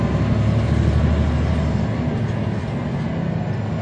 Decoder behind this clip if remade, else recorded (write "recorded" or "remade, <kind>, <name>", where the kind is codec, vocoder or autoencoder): recorded